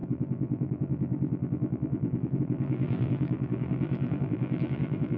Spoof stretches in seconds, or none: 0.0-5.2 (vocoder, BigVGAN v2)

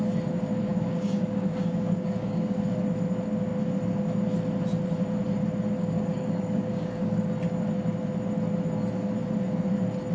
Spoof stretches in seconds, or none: 0.7-2.6 (codec, DAC); 5.8-7.3